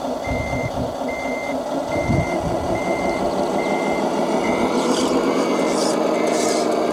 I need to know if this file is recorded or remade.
recorded